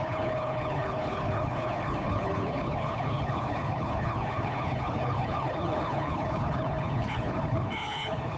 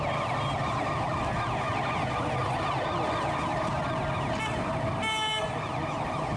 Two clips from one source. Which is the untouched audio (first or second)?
second